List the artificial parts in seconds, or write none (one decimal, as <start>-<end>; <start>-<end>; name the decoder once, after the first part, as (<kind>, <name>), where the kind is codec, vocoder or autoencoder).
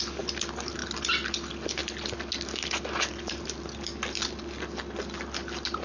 none